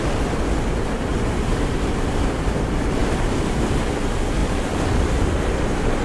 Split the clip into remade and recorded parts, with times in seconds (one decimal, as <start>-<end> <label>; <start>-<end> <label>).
0.0-1.1 recorded; 1.1-2.2 remade; 2.2-3.0 recorded; 3.0-3.8 remade; 3.8-4.4 recorded; 4.4-4.9 remade; 4.9-6.0 recorded